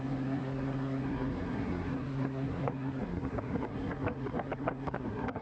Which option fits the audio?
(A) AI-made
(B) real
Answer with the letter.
A